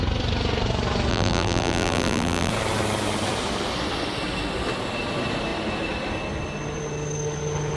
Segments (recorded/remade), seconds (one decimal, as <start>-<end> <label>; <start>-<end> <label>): 0.0-1.1 recorded; 1.1-2.5 remade; 2.5-7.8 recorded